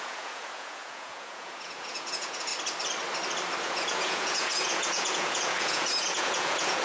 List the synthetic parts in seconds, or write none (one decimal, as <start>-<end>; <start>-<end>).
0.0-2.5; 3.6-6.8